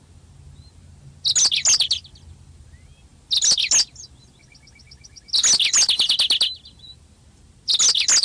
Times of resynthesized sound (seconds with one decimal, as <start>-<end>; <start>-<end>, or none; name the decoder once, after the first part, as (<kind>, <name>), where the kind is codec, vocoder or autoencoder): none